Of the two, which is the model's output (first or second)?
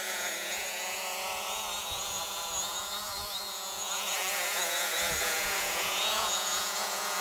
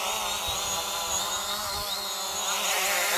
first